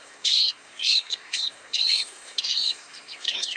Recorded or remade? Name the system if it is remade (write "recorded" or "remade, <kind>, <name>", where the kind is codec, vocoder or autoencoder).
remade, codec, SNAC